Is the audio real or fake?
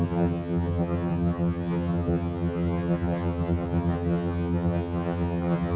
fake